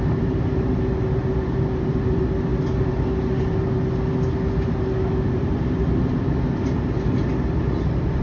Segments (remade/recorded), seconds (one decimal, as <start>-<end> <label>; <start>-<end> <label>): 0.0-8.2 recorded